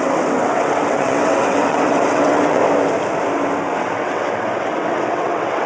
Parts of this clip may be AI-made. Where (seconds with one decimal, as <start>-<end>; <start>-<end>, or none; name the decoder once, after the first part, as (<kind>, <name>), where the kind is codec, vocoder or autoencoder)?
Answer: 0.0-2.6 (vocoder, WaveNeXt); 3.8-5.7